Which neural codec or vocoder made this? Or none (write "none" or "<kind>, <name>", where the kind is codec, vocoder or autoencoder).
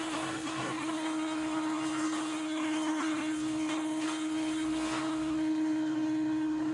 codec, SNAC